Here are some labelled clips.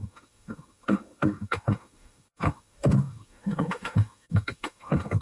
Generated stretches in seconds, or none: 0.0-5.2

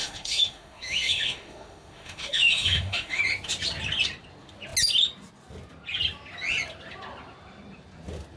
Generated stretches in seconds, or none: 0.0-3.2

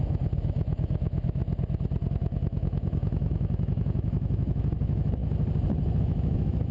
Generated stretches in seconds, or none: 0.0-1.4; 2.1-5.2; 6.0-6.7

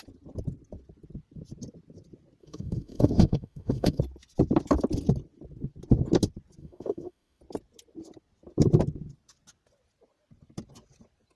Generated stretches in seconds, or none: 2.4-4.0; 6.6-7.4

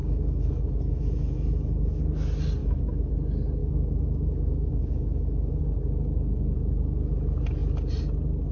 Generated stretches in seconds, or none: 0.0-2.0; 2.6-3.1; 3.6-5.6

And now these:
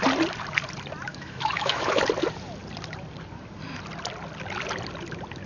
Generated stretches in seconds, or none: 1.1-2.0

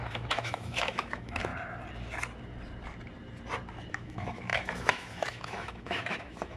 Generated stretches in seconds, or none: 0.0-1.5; 3.9-6.6